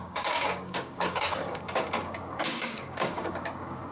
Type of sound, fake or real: fake